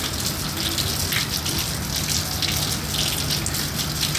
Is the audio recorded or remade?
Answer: recorded